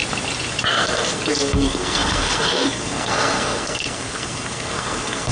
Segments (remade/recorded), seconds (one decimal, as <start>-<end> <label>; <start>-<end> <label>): 0.0-0.7 recorded; 0.7-5.3 remade